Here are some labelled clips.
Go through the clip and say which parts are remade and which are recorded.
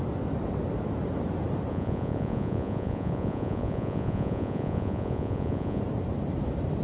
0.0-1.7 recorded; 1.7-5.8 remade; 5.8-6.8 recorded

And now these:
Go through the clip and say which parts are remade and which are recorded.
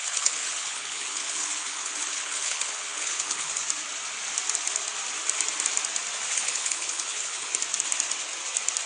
0.0-3.6 remade; 3.6-6.3 recorded; 6.3-7.5 remade; 7.5-8.9 recorded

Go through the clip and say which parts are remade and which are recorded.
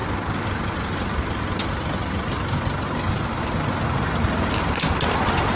0.0-5.6 recorded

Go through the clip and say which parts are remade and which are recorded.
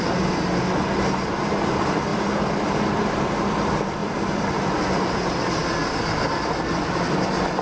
0.0-2.1 recorded; 2.1-3.5 remade; 3.5-4.0 recorded; 4.0-4.7 remade; 4.7-7.6 recorded